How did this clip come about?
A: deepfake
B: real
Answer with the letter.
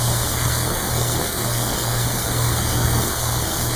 A